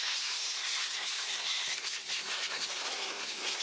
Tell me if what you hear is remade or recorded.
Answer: remade